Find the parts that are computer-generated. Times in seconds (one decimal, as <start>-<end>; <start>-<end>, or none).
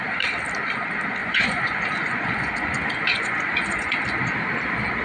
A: 1.2-3.9